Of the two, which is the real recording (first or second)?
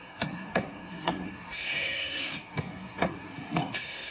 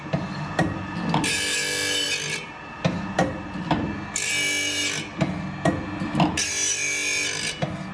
second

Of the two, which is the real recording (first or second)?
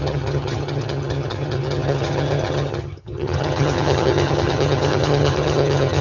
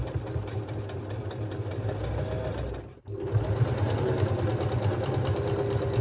second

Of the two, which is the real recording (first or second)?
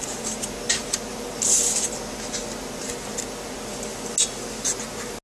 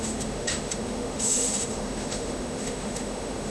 first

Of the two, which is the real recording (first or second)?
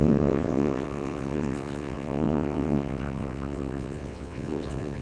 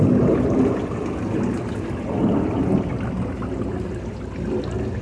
second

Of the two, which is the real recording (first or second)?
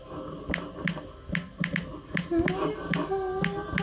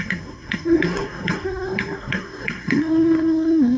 first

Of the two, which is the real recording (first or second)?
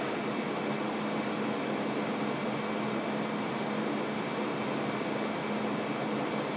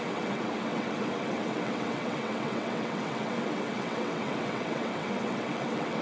first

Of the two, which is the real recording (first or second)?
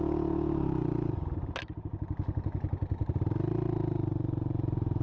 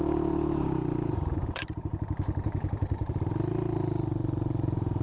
first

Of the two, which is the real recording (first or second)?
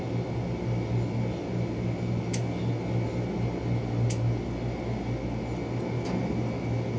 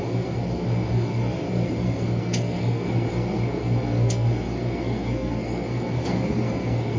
first